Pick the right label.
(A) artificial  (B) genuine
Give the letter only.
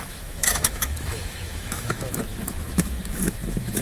A